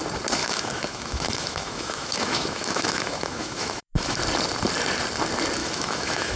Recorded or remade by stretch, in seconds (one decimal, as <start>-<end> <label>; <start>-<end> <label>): 0.0-0.4 recorded; 0.4-4.2 remade; 4.2-5.6 recorded; 5.6-6.4 remade